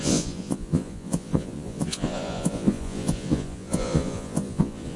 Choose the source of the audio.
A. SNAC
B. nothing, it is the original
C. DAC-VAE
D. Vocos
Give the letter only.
D